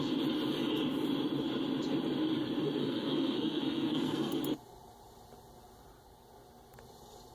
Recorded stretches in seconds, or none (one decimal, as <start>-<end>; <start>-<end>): 0.0-2.8; 4.4-7.3

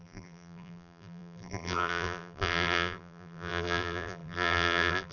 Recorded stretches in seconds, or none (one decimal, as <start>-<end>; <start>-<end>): none

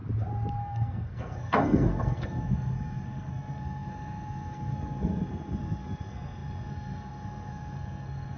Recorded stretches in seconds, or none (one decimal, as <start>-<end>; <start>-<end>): 0.0-0.6

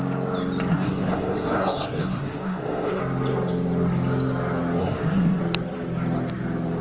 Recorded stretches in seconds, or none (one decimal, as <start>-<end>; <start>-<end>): 0.0-0.7; 3.0-4.8; 5.4-6.8

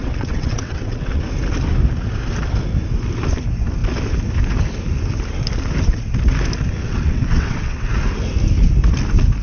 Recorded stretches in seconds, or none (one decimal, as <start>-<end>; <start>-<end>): 1.2-6.8; 7.9-9.4

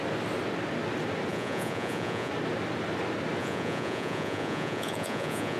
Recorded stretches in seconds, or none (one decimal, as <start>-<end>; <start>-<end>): 0.0-1.3; 2.3-3.4

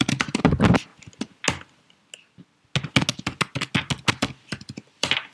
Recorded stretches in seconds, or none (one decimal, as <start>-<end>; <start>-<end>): 0.9-4.1

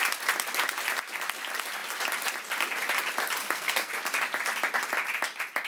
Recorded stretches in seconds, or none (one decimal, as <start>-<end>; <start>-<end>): 0.0-3.4; 3.9-5.7